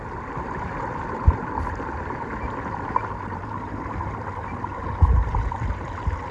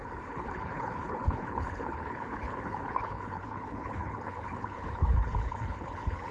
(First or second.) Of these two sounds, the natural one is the first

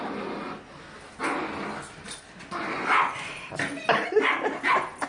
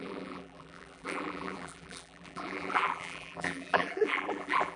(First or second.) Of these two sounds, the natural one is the first